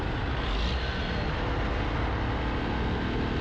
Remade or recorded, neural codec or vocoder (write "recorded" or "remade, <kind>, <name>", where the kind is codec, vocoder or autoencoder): recorded